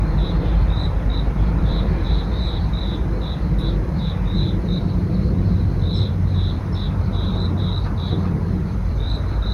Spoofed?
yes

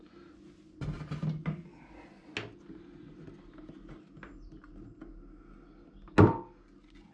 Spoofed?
no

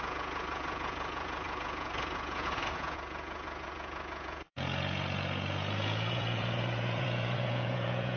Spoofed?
yes